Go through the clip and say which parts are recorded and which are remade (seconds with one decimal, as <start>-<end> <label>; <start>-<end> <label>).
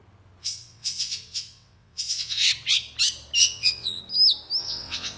0.0-0.4 recorded; 0.4-2.5 remade; 2.5-3.4 recorded; 3.4-4.0 remade; 4.0-4.6 recorded; 4.6-5.2 remade